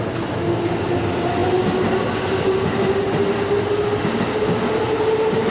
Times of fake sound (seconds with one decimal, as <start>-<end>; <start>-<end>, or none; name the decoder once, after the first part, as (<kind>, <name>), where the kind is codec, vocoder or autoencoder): none